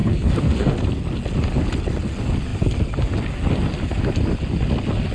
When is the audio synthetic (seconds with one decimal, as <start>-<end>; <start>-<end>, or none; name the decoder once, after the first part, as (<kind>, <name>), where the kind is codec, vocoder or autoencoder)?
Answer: 0.0-0.7 (codec, SNAC)